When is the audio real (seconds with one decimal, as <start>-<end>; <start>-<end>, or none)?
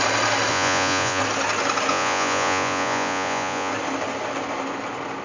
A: 0.0-0.5; 1.2-1.9; 3.7-5.2